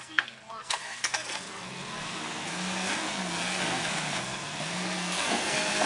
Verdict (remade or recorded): remade